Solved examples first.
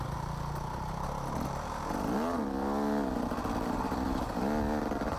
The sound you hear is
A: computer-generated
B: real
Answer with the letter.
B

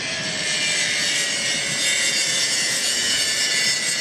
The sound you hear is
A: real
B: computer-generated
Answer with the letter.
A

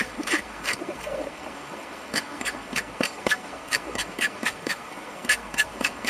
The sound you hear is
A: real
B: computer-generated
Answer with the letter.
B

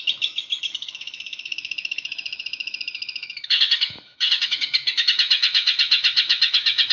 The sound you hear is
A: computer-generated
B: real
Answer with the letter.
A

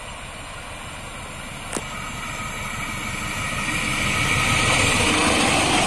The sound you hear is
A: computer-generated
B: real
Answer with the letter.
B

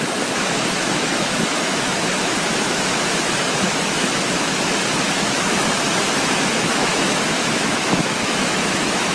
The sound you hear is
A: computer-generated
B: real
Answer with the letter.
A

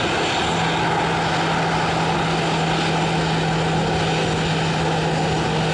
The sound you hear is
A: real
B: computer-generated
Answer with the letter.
A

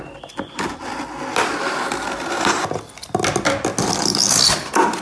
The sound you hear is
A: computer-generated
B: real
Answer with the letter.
B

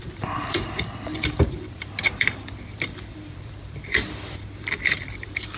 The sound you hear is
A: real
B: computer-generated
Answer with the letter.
B